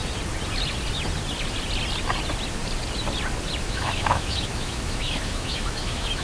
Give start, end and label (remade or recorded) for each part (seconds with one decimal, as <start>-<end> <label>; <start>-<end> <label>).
0.0-3.6 recorded; 3.6-6.2 remade

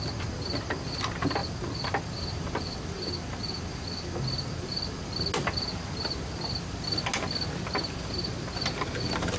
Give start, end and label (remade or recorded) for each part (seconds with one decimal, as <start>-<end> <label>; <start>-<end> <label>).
0.0-9.4 recorded

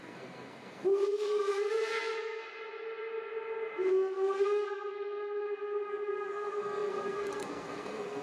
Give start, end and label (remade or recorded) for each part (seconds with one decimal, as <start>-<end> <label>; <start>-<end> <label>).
0.0-2.4 remade; 2.4-3.9 recorded; 3.9-8.2 remade

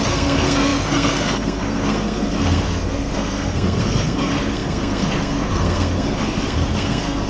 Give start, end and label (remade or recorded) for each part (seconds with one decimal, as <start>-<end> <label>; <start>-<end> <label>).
0.0-7.3 remade

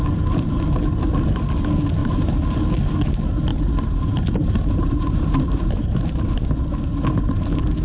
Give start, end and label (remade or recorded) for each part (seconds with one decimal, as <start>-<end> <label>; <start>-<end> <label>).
0.0-2.0 recorded; 2.0-2.7 remade; 2.7-3.5 recorded; 3.5-6.2 remade; 6.2-7.8 recorded

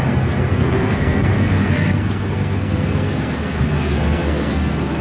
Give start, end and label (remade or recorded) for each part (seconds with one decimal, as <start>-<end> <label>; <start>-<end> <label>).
0.0-5.0 remade

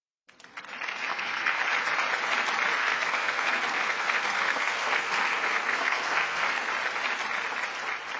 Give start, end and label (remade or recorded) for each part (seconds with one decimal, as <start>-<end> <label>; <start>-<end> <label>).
0.0-1.1 recorded; 1.1-1.6 remade; 1.6-2.8 recorded; 2.8-6.7 remade; 6.7-8.2 recorded

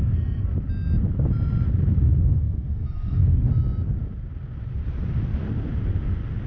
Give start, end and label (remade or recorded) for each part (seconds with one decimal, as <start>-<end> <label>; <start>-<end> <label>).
0.0-0.5 remade; 0.5-2.2 recorded; 2.2-3.2 remade; 3.2-6.5 recorded